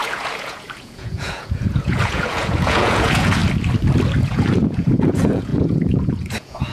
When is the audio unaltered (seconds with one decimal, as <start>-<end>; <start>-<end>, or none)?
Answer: 3.4-4.2